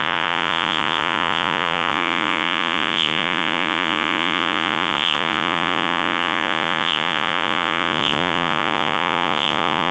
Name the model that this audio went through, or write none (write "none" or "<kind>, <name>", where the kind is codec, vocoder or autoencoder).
vocoder, Vocos